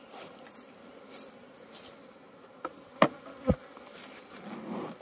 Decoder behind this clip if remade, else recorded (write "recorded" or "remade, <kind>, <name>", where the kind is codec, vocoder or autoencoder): recorded